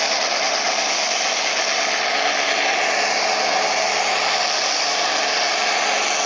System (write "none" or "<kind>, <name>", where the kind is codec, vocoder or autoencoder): none